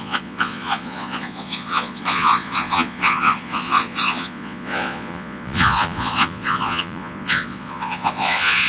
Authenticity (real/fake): fake